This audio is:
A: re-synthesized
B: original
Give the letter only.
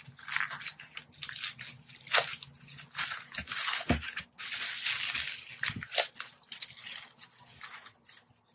B